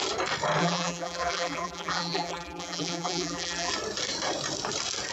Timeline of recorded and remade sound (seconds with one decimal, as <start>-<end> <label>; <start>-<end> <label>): 0.0-0.6 recorded; 0.6-3.7 remade; 3.7-5.1 recorded